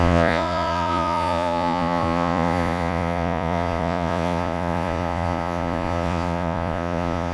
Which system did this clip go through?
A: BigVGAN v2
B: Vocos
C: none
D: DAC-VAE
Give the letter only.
B